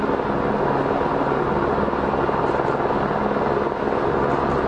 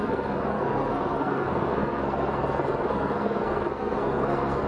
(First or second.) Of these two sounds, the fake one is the second